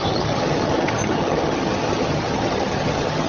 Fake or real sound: fake